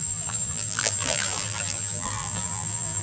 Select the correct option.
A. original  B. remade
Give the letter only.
B